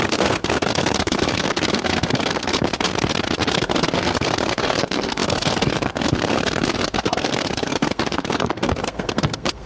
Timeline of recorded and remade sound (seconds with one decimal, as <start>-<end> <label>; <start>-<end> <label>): 0.0-2.9 remade; 2.9-3.5 recorded; 3.5-9.7 remade